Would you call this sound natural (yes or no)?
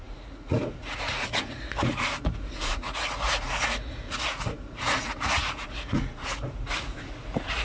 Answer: no